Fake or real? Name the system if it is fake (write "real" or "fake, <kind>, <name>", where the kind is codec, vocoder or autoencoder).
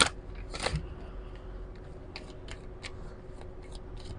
real